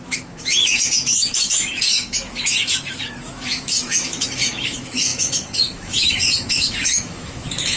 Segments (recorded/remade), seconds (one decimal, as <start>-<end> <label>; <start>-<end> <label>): 0.0-7.8 remade